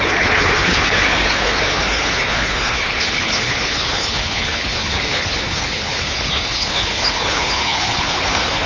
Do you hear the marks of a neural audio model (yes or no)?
yes